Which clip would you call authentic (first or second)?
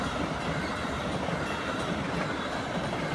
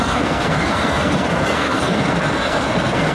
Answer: first